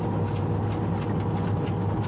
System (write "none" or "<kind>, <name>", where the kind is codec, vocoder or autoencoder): none